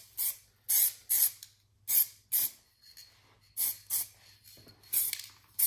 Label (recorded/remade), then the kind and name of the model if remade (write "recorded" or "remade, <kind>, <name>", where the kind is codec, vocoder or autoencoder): recorded